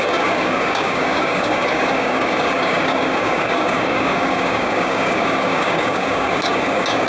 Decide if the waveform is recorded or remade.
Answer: remade